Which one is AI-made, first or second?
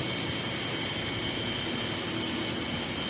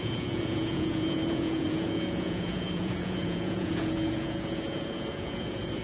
second